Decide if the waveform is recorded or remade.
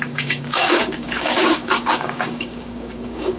remade